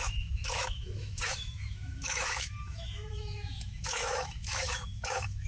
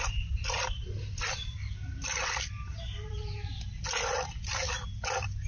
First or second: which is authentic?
second